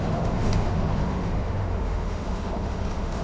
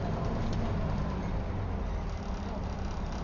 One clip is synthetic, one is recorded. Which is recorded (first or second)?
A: second